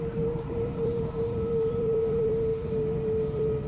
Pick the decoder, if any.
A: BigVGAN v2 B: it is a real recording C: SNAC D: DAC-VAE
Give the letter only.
A